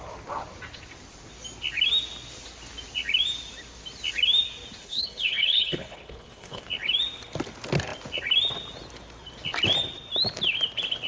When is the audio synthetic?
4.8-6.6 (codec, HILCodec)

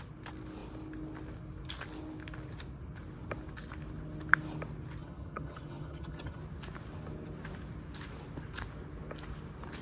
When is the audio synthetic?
5.0-6.4 (vocoder, HiFi-GAN)

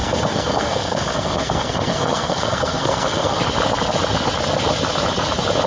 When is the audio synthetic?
0.0-3.4 (codec, SNAC)

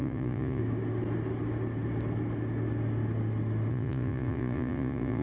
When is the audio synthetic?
0.0-0.6 (vocoder, Vocos); 3.7-5.2

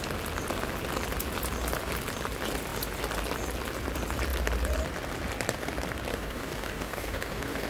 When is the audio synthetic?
6.1-7.7 (codec, DAC)

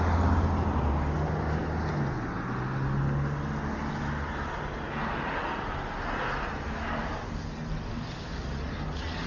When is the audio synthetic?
none

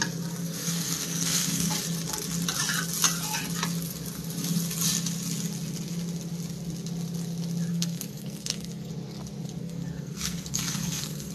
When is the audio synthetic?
0.4-1.7 (codec, SNAC); 7.7-8.9; 9.6-11.3